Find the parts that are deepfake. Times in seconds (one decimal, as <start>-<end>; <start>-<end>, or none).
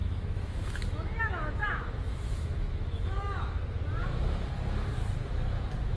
0.0-3.6; 4.0-4.5